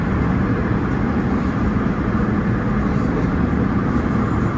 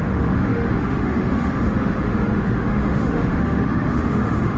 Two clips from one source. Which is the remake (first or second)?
second